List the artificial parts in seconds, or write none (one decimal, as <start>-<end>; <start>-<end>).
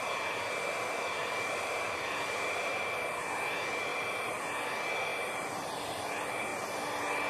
1.2-2.8; 3.9-4.4; 5.1-6.1; 6.5-7.3